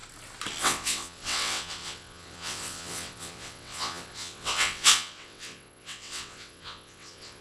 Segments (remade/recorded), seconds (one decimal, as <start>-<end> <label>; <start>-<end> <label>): 0.0-0.6 recorded; 0.6-7.4 remade